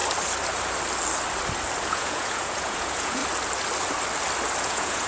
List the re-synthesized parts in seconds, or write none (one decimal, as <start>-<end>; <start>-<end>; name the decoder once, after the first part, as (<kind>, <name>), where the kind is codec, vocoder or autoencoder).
1.8-3.2 (vocoder, Vocos); 4.6-5.1